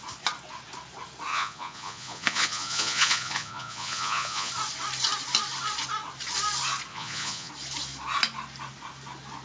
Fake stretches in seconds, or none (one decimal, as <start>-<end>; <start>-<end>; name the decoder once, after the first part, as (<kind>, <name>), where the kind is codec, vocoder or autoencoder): 1.3-4.5 (vocoder, Vocos); 6.9-7.5